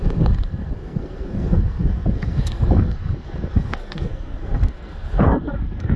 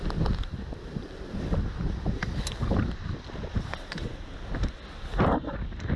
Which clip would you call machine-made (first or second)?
first